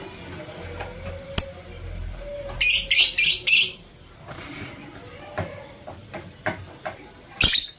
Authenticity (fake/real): real